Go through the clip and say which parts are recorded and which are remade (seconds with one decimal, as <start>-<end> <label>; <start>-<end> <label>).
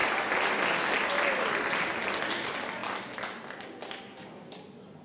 0.0-5.0 recorded